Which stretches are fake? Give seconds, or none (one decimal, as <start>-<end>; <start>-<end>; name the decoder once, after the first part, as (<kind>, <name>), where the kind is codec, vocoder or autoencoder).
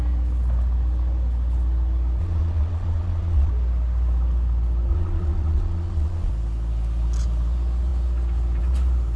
2.2-3.5 (vocoder, Vocos); 4.9-6.3